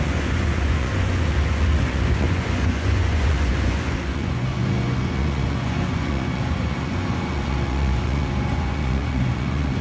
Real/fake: fake